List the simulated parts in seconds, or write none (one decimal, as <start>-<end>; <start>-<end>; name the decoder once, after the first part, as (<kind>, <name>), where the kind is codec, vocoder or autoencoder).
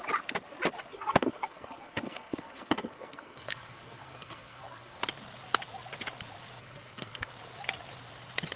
0.9-5.0 (codec, SNAC); 6.6-7.3